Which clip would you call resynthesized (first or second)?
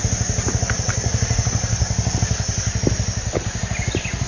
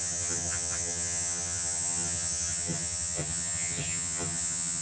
second